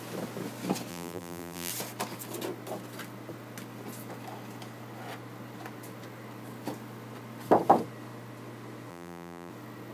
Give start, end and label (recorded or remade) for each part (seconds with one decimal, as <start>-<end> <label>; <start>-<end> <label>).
0.0-0.9 recorded; 0.9-1.7 remade; 1.7-8.9 recorded; 8.9-9.5 remade; 9.5-9.9 recorded